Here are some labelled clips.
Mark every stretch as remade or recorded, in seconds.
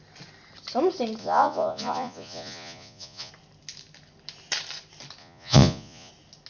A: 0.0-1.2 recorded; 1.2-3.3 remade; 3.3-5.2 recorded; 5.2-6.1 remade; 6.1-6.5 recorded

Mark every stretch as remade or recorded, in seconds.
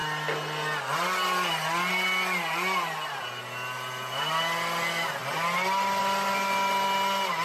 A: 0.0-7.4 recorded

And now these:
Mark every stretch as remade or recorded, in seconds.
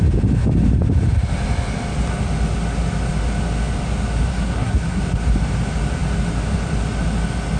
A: 0.0-4.3 recorded; 4.3-5.0 remade; 5.0-7.6 recorded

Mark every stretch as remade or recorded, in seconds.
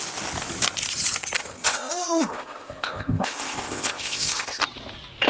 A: 0.0-1.4 recorded; 1.4-4.6 remade; 4.6-5.3 recorded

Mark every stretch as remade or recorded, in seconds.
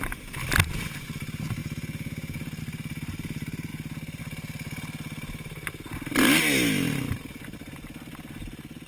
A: 0.0-1.6 recorded; 1.6-2.6 remade; 2.6-8.9 recorded